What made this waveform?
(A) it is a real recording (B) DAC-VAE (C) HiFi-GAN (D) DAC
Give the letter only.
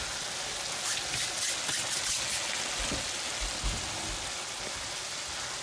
A